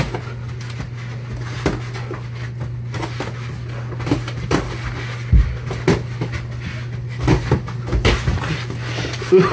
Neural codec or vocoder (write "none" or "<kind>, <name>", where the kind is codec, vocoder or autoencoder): none